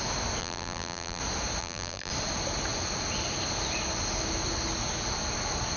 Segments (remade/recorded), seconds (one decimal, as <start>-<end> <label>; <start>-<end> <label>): 0.0-0.4 recorded; 0.4-1.2 remade; 1.2-1.6 recorded; 1.6-2.1 remade; 2.1-5.8 recorded